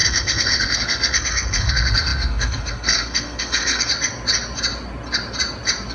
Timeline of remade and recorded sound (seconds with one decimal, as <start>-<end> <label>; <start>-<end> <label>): 0.0-3.9 remade; 3.9-5.9 recorded